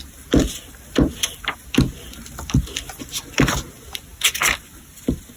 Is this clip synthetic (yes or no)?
no